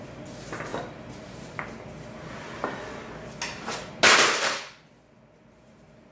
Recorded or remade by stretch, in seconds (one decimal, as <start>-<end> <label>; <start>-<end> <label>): 0.0-6.1 recorded